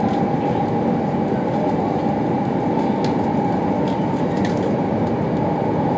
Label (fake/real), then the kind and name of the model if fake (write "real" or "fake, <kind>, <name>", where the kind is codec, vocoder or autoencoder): real